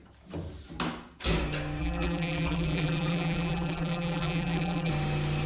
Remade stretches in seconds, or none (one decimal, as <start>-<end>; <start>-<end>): 1.8-4.9